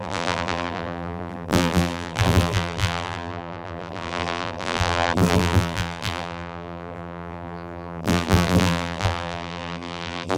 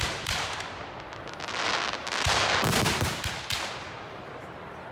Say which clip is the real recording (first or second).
second